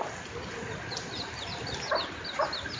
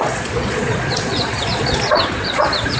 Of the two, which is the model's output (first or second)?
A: second